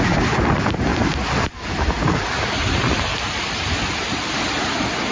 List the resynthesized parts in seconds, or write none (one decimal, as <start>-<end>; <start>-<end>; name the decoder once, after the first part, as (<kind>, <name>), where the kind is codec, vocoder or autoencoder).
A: none